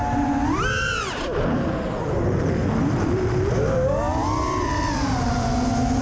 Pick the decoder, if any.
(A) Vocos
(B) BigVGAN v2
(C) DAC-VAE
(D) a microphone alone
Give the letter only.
D